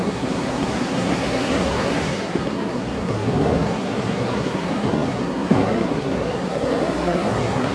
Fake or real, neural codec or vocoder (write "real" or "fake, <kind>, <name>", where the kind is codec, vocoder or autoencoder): fake, codec, SNAC